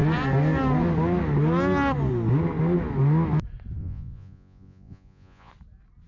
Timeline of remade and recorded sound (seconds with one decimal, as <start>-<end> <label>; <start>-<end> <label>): 0.0-3.8 recorded; 3.8-5.5 remade; 5.5-6.1 recorded